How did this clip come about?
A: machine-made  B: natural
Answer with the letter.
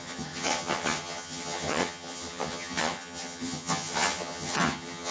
A